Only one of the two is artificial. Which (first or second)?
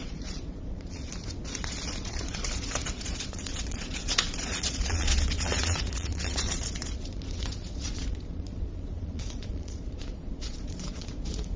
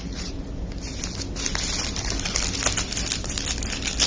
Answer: first